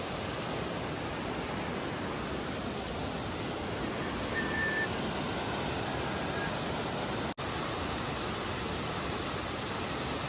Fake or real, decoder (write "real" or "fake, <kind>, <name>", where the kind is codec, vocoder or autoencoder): real